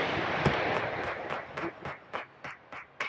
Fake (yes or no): no